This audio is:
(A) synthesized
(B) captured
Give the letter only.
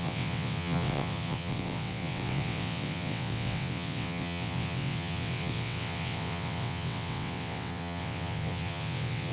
A